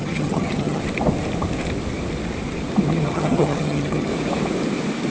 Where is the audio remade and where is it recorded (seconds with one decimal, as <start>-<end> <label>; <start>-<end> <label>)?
0.0-0.8 remade; 0.8-3.1 recorded; 3.1-4.1 remade; 4.1-5.1 recorded